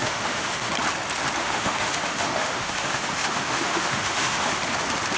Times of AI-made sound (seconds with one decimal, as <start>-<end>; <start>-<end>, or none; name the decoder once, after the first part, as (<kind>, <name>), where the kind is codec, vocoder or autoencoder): 0.0-0.7 (autoencoder, DAC-VAE); 1.4-4.5